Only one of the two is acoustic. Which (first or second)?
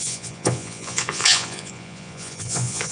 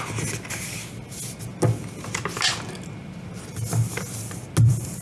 second